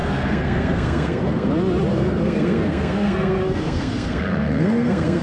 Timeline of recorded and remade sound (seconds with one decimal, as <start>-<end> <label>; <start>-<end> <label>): 0.0-1.5 remade; 1.5-1.9 recorded; 1.9-5.2 remade

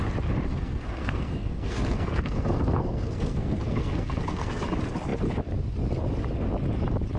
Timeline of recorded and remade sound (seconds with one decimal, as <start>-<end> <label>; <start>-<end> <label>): 0.0-0.5 recorded; 0.5-4.6 remade; 4.6-7.2 recorded

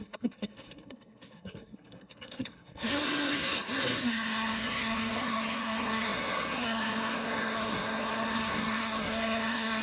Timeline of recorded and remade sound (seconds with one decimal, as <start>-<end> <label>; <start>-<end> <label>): 0.0-9.8 remade

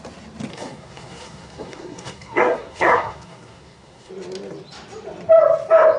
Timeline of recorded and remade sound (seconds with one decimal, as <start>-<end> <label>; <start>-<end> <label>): 0.0-0.5 recorded; 0.5-4.1 remade; 4.1-6.0 recorded

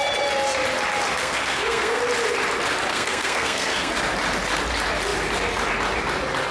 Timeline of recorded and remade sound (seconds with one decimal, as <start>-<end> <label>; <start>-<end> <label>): 0.0-1.2 recorded; 1.2-2.0 remade; 2.0-2.9 recorded; 2.9-3.9 remade; 3.9-6.5 recorded

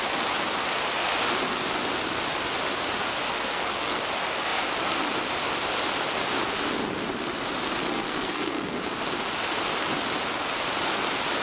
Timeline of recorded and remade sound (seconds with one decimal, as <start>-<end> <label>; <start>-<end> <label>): 0.0-3.3 recorded; 3.3-4.0 remade; 4.0-7.8 recorded; 7.8-8.8 remade; 8.8-11.4 recorded

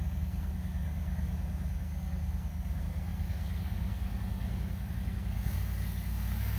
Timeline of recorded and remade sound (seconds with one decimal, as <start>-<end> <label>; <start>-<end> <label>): 0.0-6.6 remade